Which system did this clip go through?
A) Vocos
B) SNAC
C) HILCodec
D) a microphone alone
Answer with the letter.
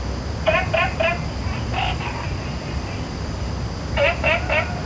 D